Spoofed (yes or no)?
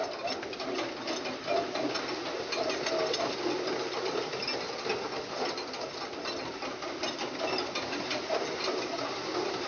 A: no